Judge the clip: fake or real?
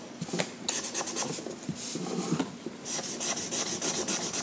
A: real